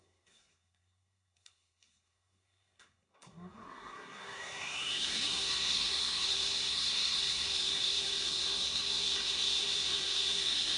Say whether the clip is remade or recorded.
remade